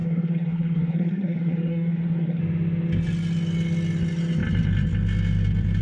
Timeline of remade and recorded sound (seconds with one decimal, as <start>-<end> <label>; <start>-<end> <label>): 0.0-2.4 remade; 2.4-5.8 recorded